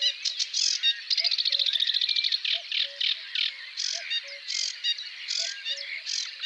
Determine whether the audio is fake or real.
real